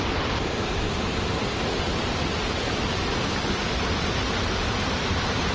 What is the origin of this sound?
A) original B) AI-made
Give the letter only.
B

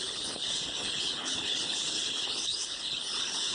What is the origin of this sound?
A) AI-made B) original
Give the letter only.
A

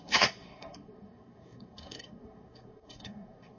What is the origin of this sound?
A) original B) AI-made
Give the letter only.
B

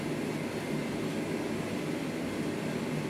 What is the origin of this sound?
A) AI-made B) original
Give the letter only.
B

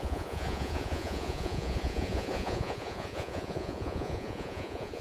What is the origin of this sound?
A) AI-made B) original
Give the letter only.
A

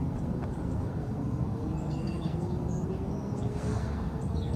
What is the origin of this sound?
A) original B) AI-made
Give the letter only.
B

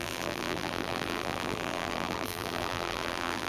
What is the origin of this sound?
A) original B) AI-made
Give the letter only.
B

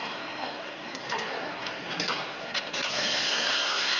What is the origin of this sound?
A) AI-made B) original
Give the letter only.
A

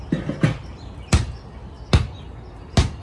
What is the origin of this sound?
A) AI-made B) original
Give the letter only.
B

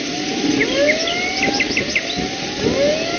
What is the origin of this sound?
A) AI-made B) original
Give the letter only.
B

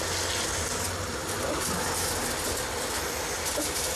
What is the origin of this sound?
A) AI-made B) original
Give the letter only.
B